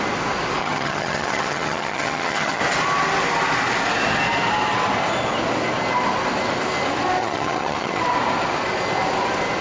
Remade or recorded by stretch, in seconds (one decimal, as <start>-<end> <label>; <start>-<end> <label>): 0.0-0.6 recorded; 0.6-2.6 remade; 2.6-7.2 recorded; 7.2-8.0 remade; 8.0-9.6 recorded